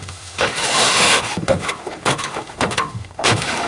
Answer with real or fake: fake